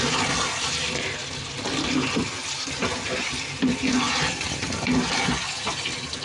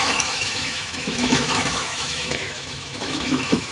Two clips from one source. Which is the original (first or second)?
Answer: first